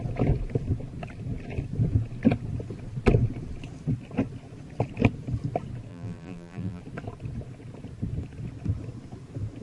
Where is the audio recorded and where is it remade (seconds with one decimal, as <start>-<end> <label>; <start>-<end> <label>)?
0.0-5.9 recorded; 5.9-6.8 remade; 6.8-9.6 recorded